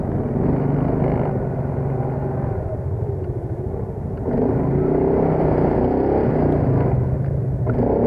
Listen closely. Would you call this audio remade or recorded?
recorded